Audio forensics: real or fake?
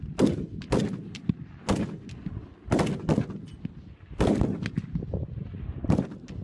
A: real